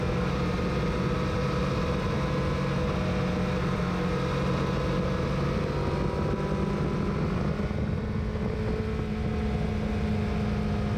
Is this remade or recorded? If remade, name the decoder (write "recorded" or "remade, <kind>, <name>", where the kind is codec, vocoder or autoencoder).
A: recorded